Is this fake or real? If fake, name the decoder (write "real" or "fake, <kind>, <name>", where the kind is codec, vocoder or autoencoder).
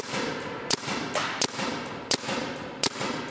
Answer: real